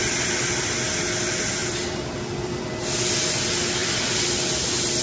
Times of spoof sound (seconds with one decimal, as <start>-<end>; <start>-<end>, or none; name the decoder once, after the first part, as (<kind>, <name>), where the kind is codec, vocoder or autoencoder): 1.6-2.6 (vocoder, BigVGAN v2); 3.8-4.6